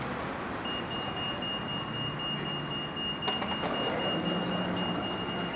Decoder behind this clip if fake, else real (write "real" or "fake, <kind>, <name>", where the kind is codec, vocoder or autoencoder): real